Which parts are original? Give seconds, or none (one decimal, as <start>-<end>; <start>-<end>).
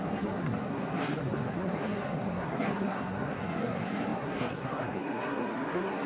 none